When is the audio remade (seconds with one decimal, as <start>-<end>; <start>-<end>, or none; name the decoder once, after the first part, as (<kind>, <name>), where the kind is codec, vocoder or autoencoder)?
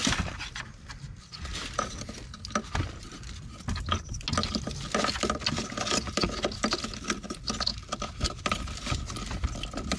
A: none